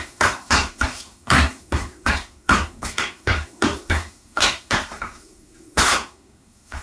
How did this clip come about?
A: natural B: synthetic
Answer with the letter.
B